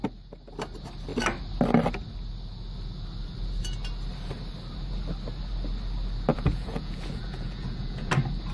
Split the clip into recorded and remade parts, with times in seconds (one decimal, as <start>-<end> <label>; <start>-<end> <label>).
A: 0.0-6.3 recorded; 6.3-8.1 remade; 8.1-8.5 recorded